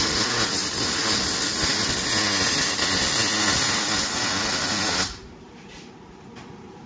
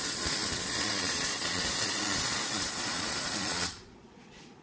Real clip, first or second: first